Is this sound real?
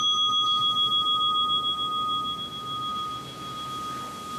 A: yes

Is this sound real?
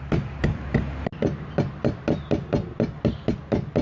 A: yes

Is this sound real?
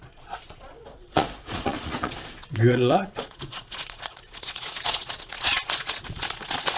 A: no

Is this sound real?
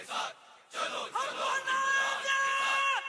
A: no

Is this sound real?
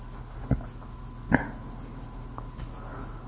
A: yes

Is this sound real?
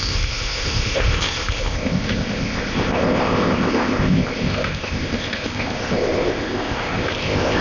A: no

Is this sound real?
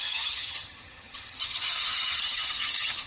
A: no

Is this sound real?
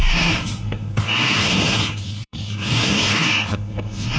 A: no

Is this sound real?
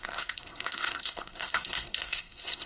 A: no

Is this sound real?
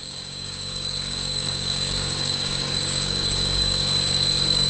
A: no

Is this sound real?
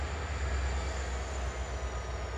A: yes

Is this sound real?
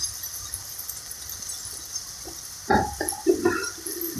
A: no